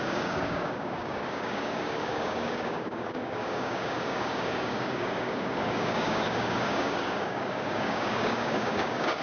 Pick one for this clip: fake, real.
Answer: fake